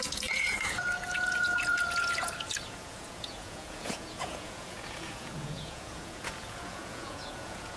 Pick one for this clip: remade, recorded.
remade